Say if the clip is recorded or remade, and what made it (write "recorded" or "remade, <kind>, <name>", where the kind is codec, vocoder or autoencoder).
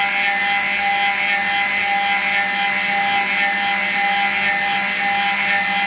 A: recorded